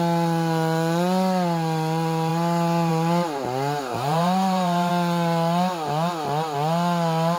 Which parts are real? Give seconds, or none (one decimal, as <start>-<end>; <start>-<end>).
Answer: 0.0-3.9; 4.9-7.4